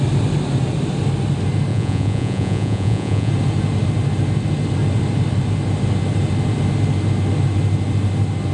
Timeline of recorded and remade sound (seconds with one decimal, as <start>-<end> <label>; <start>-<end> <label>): 0.0-1.7 recorded; 1.7-3.3 remade; 3.3-8.5 recorded